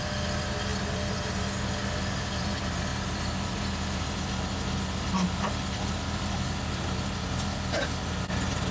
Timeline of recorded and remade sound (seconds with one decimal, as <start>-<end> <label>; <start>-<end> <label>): 0.0-8.7 recorded